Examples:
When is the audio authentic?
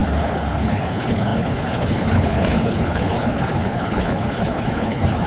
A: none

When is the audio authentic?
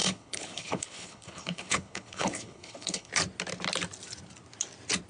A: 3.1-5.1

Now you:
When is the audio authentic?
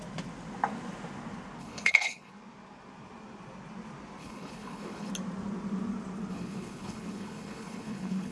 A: 0.0-1.6; 2.3-4.2; 5.1-6.3